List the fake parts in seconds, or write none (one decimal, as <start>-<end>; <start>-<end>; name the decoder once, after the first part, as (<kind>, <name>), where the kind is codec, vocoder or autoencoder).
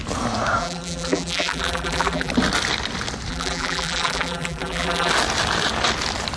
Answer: 0.6-2.3 (vocoder, BigVGAN v2); 3.3-5.1